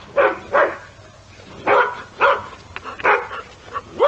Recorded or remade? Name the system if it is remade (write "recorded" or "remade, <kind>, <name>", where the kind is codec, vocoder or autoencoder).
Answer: remade, vocoder, BigVGAN v2